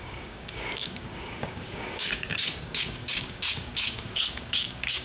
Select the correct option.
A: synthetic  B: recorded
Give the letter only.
A